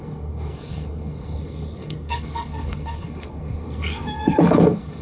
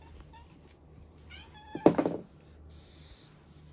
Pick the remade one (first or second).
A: first